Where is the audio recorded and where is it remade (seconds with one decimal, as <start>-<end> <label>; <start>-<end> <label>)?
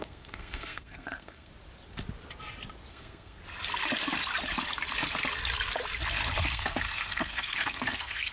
0.0-1.5 remade; 1.5-2.9 recorded; 2.9-3.4 remade; 3.4-6.5 recorded; 6.5-8.3 remade